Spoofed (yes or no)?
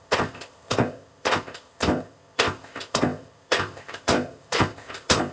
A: yes